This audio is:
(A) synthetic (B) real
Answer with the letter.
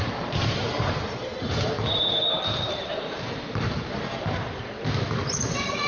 A